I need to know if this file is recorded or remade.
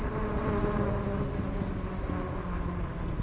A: recorded